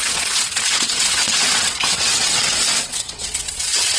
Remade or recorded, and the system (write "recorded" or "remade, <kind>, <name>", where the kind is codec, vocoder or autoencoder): remade, vocoder, WaveNeXt